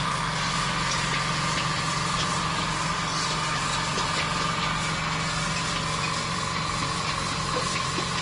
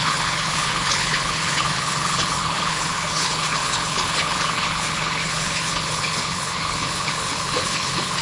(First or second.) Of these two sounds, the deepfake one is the second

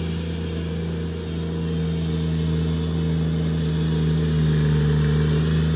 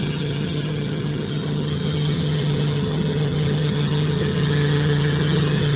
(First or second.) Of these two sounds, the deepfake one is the second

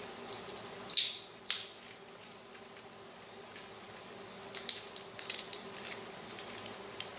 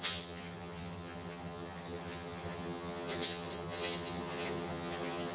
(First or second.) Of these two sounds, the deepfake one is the second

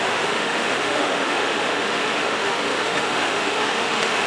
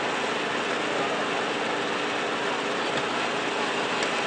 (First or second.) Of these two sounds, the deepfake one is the first